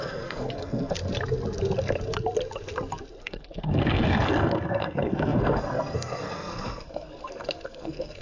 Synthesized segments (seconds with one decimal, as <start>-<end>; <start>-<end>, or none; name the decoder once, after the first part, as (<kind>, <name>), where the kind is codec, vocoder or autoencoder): 0.0-1.0 (codec, SNAC); 3.2-8.2